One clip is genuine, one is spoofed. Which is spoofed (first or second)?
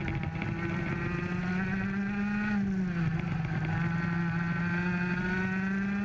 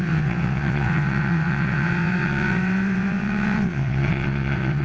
second